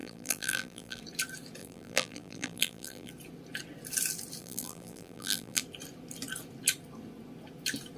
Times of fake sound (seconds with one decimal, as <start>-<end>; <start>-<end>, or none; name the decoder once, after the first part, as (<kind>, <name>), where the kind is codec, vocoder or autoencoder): 0.0-1.0 (vocoder, BigVGAN v2); 1.6-3.1; 4.4-5.6